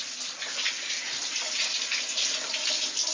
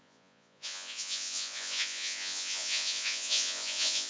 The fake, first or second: second